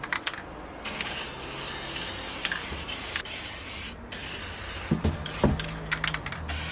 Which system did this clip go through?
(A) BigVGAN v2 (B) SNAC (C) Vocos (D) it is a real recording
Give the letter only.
D